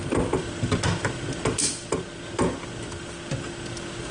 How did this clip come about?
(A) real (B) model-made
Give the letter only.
A